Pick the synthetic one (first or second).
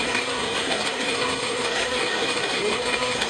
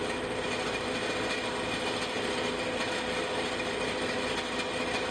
first